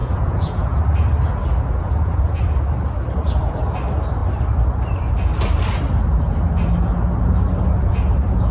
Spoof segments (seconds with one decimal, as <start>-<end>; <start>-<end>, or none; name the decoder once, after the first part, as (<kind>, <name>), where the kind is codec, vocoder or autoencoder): 0.0-0.8 (vocoder, Vocos); 1.8-2.4